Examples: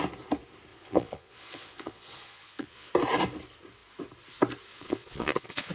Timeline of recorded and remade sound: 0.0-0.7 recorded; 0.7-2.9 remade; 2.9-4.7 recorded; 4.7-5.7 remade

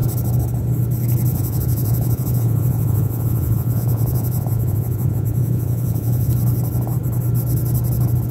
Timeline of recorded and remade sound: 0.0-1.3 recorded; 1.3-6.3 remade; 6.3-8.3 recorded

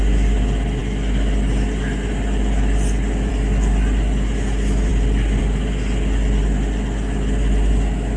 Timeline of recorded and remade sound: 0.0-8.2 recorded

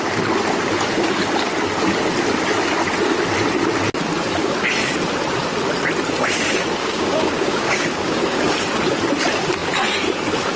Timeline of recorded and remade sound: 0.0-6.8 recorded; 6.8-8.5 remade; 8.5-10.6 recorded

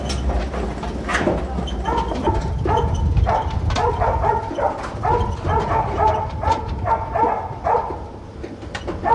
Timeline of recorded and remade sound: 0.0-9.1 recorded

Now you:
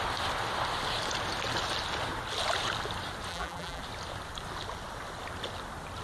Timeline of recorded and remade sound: 0.0-3.3 recorded; 3.3-3.8 remade; 3.8-6.0 recorded

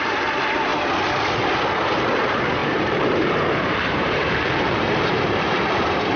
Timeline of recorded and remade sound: 0.0-0.7 remade; 0.7-2.0 recorded; 2.0-6.2 remade

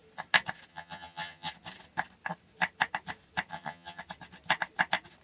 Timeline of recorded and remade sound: 0.0-0.7 recorded; 0.7-1.5 remade; 1.5-3.5 recorded; 3.5-4.0 remade; 4.0-5.2 recorded